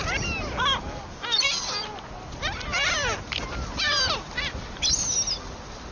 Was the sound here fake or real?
real